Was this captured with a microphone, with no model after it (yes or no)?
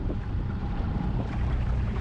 no